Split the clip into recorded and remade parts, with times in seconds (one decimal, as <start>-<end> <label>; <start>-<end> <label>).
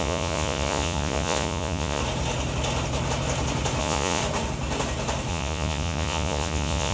0.0-2.0 remade; 2.0-3.8 recorded; 3.8-4.2 remade; 4.2-5.3 recorded; 5.3-6.9 remade